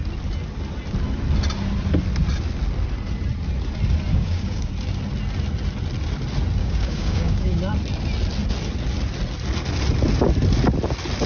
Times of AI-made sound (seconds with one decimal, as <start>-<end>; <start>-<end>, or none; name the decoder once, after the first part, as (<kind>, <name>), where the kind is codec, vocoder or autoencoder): 4.1-4.7 (codec, DAC); 6.6-7.6